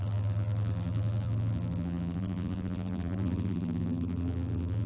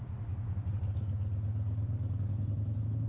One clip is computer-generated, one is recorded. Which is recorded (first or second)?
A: second